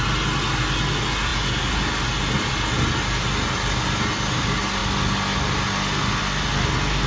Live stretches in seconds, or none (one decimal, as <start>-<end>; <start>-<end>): 0.0-7.1